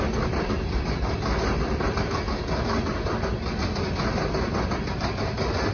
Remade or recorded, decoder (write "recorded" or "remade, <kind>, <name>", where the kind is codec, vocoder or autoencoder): recorded